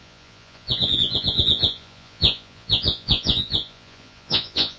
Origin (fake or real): fake